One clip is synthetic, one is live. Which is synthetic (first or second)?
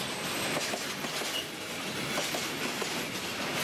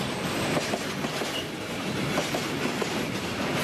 second